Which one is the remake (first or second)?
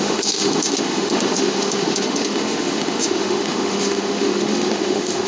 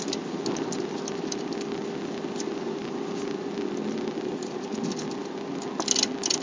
first